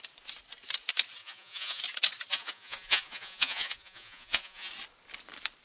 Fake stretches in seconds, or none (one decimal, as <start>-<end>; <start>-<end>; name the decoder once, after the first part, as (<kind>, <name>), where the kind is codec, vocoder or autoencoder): 1.2-1.8 (vocoder, Vocos); 2.3-4.7